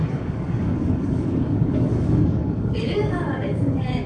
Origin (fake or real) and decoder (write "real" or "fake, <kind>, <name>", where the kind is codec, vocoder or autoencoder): fake, codec, DAC